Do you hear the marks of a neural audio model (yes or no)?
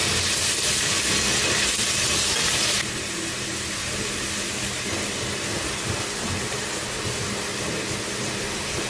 no